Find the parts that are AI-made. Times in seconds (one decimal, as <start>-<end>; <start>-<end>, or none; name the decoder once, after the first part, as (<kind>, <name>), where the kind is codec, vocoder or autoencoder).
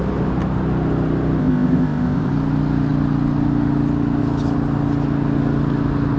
1.4-2.3 (codec, ZipCodec)